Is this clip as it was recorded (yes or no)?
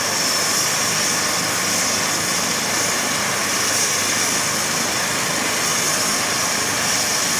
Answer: yes